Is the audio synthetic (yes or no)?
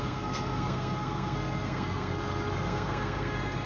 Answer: yes